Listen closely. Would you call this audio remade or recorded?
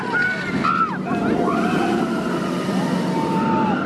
recorded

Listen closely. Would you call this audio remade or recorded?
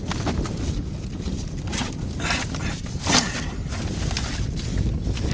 recorded